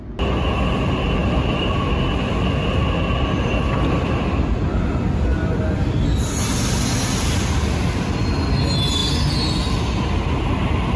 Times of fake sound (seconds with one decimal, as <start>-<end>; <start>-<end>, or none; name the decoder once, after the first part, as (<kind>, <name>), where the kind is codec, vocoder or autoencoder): 1.2-1.9 (vocoder, BigVGAN v2)